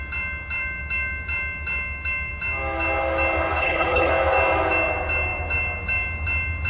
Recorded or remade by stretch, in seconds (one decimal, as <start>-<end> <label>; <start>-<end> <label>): 0.0-3.6 recorded; 3.6-4.1 remade; 4.1-6.7 recorded